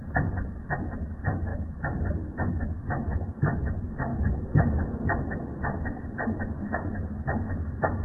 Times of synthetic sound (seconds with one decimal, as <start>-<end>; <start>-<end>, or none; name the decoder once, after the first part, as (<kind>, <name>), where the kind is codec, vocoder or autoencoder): 1.5-2.8 (autoencoder, DAC-VAE); 4.1-4.9